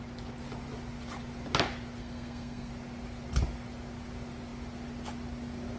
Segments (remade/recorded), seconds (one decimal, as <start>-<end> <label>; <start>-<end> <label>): 0.0-2.0 recorded; 2.0-2.7 remade; 2.7-5.8 recorded